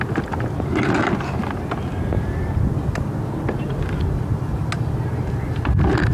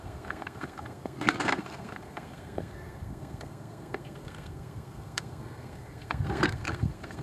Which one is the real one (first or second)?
first